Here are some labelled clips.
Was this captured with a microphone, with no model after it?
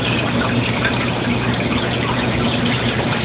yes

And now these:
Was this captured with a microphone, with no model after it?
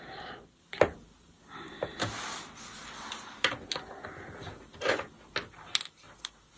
yes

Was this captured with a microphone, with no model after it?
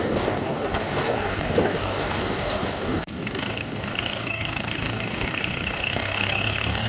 no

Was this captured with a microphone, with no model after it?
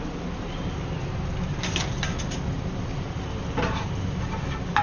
yes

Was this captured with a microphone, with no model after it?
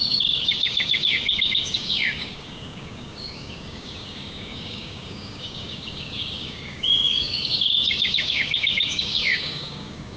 no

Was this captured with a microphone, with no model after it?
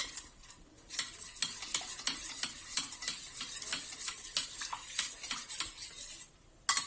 yes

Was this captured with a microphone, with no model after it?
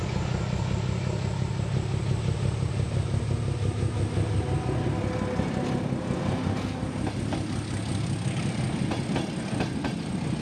yes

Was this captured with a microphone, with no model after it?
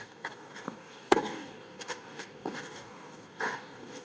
no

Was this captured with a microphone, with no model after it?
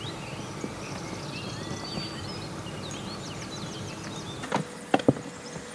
yes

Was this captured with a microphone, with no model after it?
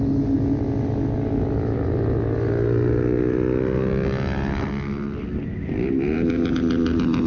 yes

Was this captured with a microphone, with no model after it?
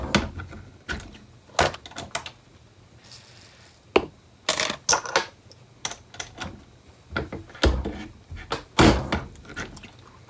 yes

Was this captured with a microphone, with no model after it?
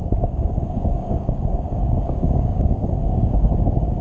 no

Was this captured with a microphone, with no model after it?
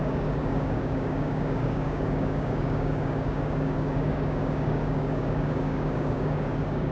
no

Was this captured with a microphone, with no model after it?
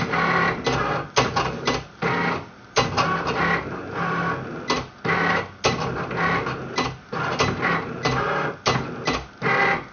yes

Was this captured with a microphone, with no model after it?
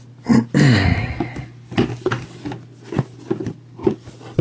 yes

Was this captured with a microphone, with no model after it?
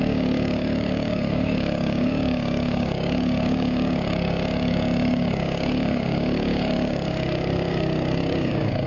no